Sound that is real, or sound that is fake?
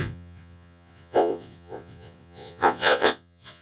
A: fake